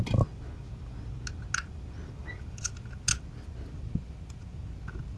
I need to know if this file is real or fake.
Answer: real